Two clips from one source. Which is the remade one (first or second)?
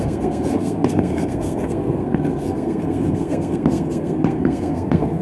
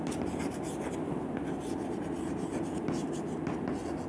first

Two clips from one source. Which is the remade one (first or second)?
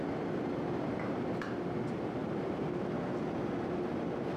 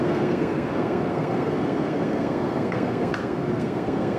second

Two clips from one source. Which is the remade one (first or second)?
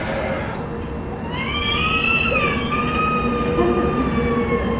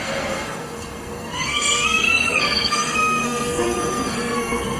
second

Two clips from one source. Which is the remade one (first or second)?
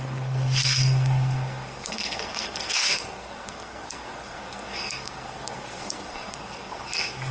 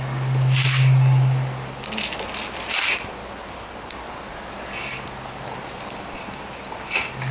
first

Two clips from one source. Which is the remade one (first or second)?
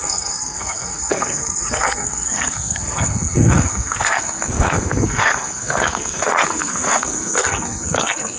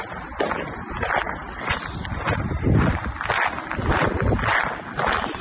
first